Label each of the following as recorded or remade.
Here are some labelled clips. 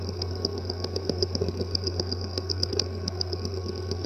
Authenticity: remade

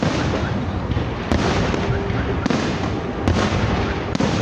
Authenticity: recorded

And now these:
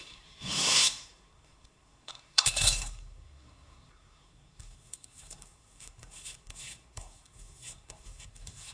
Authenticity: remade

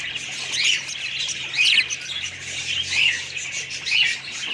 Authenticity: recorded